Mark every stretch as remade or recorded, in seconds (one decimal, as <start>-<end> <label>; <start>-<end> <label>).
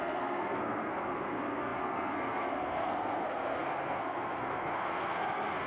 0.0-5.7 remade